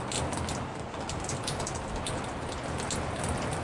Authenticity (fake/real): real